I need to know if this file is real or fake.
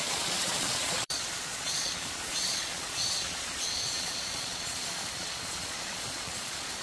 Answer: fake